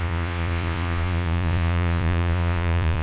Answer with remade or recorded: remade